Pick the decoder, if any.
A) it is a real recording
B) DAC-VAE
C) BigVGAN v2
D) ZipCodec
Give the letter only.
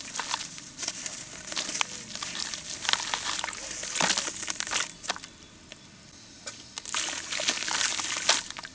A